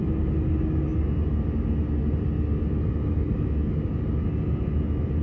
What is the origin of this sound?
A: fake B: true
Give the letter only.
B